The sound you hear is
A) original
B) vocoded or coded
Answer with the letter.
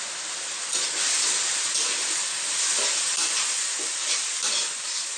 A